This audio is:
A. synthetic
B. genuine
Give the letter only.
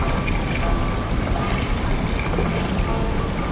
B